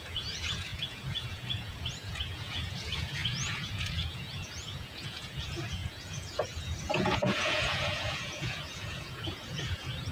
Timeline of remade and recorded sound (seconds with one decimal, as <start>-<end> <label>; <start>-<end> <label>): 0.0-10.1 remade